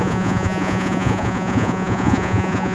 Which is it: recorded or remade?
remade